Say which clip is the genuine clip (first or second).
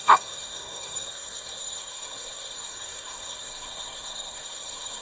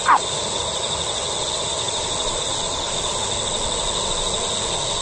second